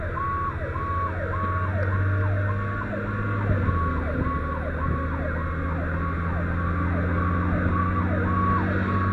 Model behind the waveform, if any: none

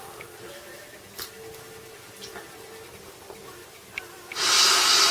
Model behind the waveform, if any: none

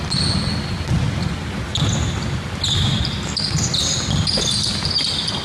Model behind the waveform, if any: none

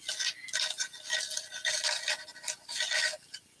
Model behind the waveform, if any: none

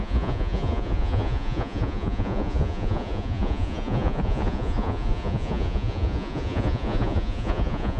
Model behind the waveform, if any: vocoder, Vocos